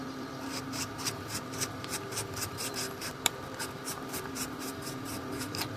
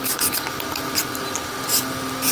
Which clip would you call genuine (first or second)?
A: second